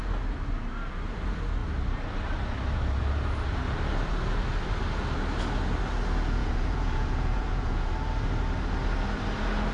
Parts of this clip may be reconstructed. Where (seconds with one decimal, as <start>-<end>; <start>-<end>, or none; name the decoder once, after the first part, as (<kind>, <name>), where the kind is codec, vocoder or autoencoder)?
6.4-7.9 (vocoder, Vocos)